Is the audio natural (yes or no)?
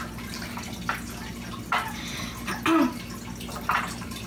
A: yes